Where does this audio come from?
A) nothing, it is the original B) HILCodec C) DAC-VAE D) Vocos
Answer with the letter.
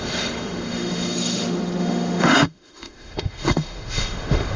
C